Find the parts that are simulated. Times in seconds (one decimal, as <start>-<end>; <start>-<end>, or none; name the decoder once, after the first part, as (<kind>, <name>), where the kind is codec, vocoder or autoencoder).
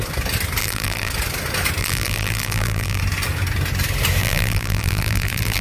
0.6-1.1 (vocoder, BigVGAN v2); 1.8-3.0; 4.2-5.6